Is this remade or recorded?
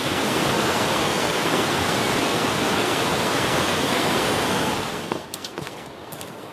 remade